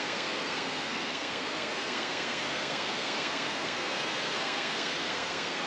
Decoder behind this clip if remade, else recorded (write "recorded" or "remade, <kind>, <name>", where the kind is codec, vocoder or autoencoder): remade, codec, SNAC